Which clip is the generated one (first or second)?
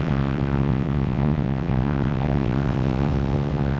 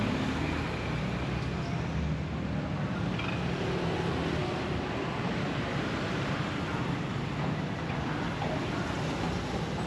first